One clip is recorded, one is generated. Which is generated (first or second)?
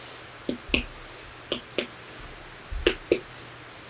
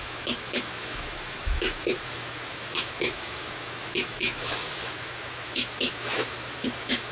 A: second